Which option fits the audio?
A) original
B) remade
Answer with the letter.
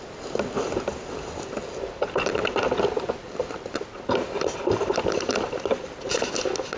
A